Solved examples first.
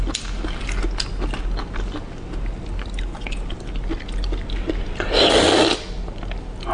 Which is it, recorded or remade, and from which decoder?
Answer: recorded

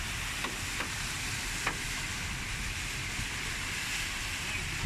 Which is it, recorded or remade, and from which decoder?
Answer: recorded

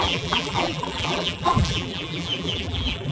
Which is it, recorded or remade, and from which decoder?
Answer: remade, vocoder, BigVGAN v2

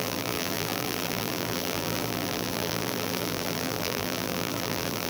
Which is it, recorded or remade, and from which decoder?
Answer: remade, vocoder, BigVGAN v2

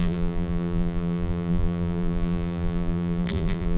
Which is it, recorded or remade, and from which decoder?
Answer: remade, vocoder, BigVGAN v2